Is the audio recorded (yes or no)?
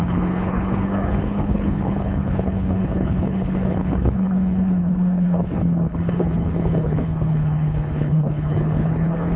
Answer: no